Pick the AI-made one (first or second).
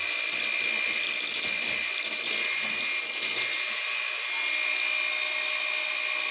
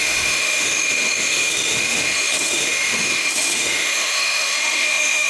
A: second